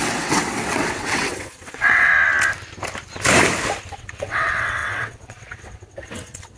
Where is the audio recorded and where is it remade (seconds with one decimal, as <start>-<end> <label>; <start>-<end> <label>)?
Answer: 0.0-2.1 remade; 2.1-3.9 recorded; 3.9-6.6 remade

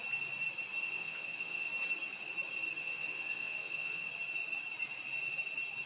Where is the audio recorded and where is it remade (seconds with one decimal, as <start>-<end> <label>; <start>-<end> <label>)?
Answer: 0.0-0.8 recorded; 0.8-1.7 remade; 1.7-2.8 recorded; 2.8-4.1 remade; 4.1-5.9 recorded